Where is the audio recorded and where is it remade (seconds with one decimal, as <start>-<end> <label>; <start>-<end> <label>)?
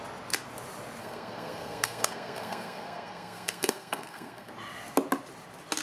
0.0-1.0 recorded; 1.0-4.5 remade; 4.5-5.8 recorded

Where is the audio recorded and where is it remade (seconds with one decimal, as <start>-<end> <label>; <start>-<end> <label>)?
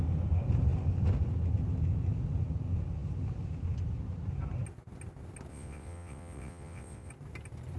0.0-5.5 recorded; 5.5-7.1 remade; 7.1-7.8 recorded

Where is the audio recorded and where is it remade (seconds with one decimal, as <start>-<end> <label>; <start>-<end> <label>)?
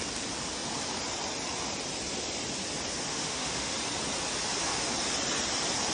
0.0-3.1 recorded; 3.1-3.7 remade; 3.7-5.9 recorded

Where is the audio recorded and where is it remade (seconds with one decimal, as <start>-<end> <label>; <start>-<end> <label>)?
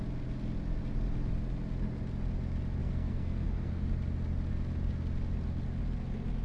0.0-2.8 recorded; 2.8-3.9 remade; 3.9-6.4 recorded